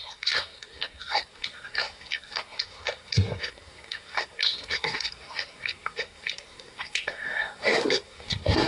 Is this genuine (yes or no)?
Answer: no